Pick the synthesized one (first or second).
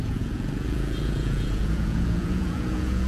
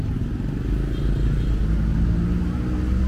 first